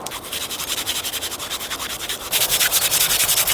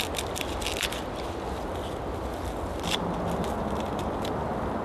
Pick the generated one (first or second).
first